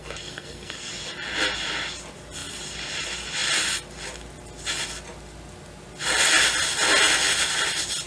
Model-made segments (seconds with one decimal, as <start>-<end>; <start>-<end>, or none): 0.0-0.9

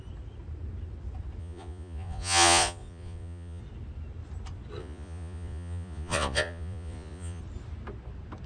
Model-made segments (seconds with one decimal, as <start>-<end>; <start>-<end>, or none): 1.4-3.6; 4.8-7.4

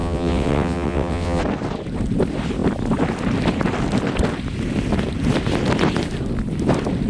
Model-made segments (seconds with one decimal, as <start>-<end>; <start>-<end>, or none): 0.0-1.4

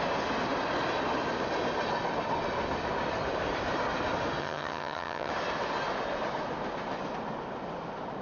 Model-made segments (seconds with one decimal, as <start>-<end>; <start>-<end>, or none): 4.4-5.3

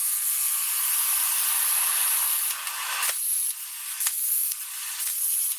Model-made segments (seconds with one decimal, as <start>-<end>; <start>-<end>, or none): 0.0-1.2; 3.7-4.6

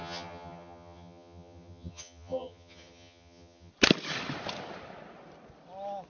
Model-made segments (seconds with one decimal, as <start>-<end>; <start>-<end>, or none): 0.0-3.7

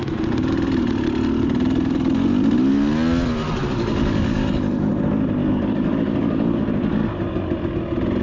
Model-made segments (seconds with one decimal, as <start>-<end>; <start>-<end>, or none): 3.6-4.9; 5.4-6.6

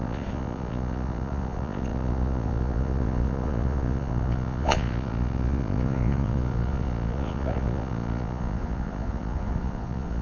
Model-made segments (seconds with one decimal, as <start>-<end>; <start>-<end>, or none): 0.0-10.2